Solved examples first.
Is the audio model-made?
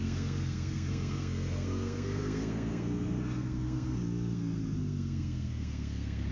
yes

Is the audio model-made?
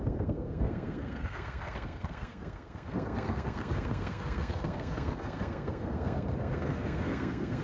yes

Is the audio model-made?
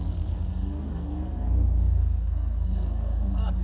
yes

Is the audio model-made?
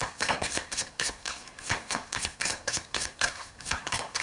yes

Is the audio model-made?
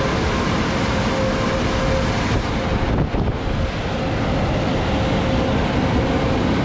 no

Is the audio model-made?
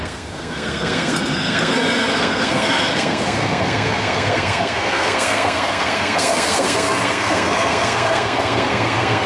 yes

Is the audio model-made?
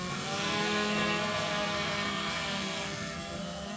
yes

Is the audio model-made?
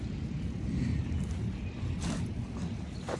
no